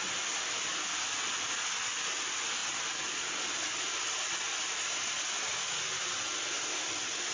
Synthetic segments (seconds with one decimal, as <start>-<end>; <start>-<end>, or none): none